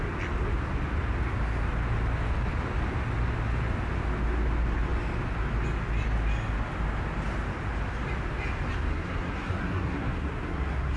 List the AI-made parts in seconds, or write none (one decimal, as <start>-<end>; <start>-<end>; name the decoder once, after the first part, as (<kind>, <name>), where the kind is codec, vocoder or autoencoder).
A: 8.9-11.0 (codec, SNAC)